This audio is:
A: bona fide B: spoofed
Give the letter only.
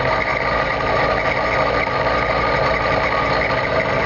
A